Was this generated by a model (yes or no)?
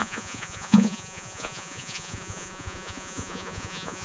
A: yes